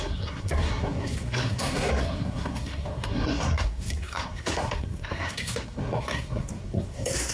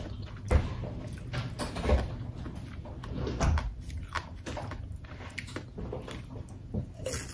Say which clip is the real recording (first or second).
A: second